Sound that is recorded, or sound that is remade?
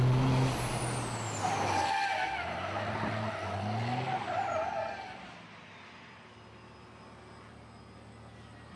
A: recorded